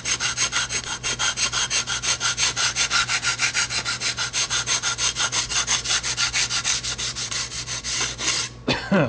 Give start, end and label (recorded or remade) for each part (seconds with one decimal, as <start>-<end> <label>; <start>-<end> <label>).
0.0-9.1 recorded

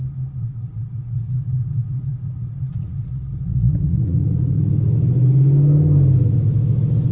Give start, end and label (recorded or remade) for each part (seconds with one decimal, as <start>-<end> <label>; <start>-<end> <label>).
0.0-0.4 recorded; 0.4-4.6 remade; 4.6-7.1 recorded

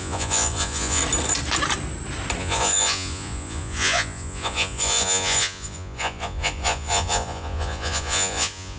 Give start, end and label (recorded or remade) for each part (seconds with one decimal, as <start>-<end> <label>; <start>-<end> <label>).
0.0-1.0 remade; 1.0-2.4 recorded; 2.4-8.8 remade

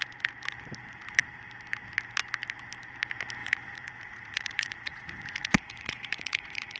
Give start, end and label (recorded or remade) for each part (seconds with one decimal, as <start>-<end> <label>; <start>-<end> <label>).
0.0-3.4 recorded; 3.4-6.8 remade